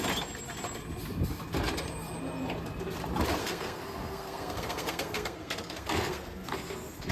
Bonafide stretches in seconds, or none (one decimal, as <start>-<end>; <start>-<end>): 0.0-3.4